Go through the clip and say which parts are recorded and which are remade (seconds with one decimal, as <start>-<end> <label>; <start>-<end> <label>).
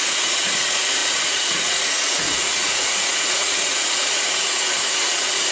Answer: 0.0-5.5 remade